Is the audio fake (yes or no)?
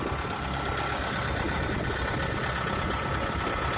no